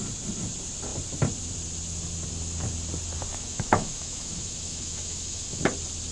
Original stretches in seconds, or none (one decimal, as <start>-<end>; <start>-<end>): 0.0-3.3; 5.6-6.1